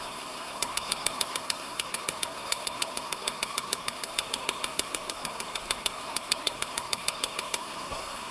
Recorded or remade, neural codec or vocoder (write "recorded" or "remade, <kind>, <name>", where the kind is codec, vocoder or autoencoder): remade, codec, SNAC